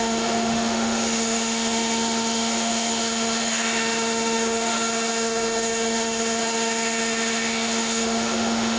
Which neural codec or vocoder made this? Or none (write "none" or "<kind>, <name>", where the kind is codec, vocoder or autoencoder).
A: autoencoder, DAC-VAE